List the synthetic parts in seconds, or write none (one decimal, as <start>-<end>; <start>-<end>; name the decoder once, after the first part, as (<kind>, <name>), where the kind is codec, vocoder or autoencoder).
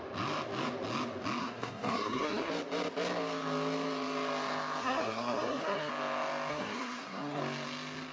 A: 1.4-2.5 (codec, SNAC); 4.8-5.9; 6.5-7.4